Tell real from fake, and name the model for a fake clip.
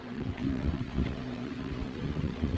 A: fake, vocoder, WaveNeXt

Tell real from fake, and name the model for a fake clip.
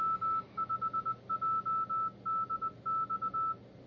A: real